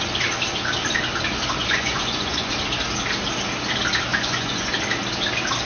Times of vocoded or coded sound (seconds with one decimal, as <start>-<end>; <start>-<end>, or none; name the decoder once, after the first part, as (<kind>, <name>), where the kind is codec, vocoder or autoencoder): 1.6-2.5 (vocoder, Vocos); 4.1-4.7